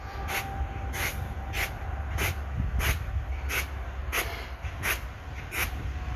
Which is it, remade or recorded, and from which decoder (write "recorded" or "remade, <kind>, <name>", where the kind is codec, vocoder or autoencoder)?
recorded